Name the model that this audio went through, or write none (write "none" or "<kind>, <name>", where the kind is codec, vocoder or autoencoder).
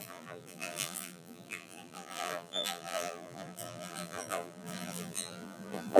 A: vocoder, BigVGAN v2